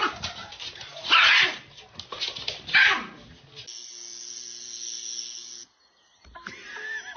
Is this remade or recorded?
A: recorded